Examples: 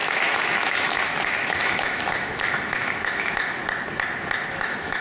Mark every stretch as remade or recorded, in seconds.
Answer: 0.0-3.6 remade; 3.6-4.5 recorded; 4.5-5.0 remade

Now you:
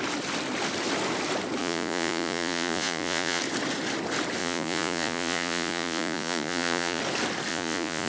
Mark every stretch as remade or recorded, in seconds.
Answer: 0.0-1.6 recorded; 1.6-3.4 remade; 3.4-4.4 recorded; 4.4-7.0 remade; 7.0-7.5 recorded; 7.5-8.1 remade

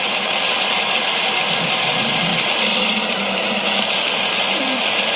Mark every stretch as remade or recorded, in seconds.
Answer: 0.0-2.3 remade; 2.3-4.2 recorded; 4.2-5.2 remade

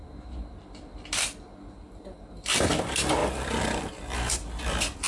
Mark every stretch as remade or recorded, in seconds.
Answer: 0.0-5.1 recorded